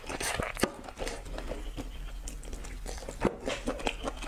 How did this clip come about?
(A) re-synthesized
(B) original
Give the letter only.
B